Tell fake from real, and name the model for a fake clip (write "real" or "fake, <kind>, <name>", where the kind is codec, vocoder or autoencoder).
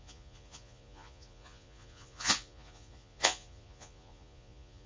fake, vocoder, Vocos